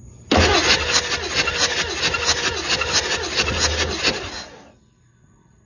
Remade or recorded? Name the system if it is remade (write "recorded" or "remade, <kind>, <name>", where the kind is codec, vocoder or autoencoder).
recorded